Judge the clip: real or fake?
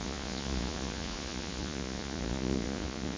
fake